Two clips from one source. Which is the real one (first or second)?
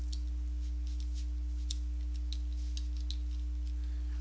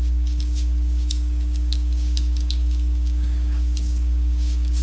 first